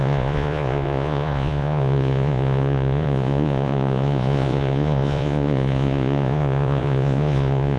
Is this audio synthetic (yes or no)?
yes